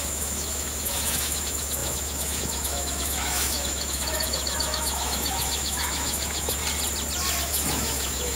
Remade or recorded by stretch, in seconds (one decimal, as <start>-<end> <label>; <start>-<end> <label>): 0.0-6.6 remade; 6.6-7.4 recorded; 7.4-8.4 remade